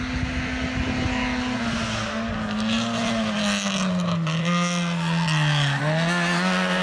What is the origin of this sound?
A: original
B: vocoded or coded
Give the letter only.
A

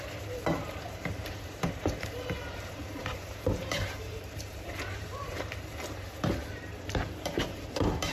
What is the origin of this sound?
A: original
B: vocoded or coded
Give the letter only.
B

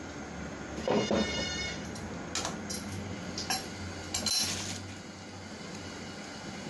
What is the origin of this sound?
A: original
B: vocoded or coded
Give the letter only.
A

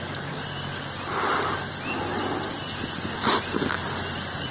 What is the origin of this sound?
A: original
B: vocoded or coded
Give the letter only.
A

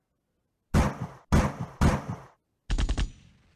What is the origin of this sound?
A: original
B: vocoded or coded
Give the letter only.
A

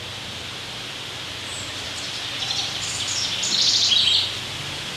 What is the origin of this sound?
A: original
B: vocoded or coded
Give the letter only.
B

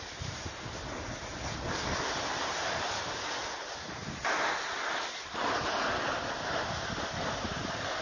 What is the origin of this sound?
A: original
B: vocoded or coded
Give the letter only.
A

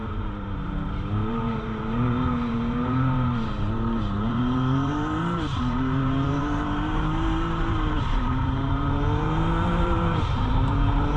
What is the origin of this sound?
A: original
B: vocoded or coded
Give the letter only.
B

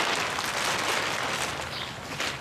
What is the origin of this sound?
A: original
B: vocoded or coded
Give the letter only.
A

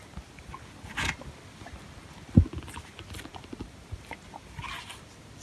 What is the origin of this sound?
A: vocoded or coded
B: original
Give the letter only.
B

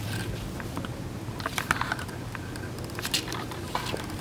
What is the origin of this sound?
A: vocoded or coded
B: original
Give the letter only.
B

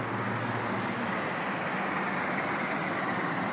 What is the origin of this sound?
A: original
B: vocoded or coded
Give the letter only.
A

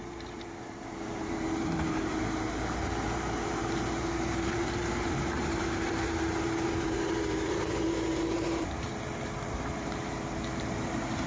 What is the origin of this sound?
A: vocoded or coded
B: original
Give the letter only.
A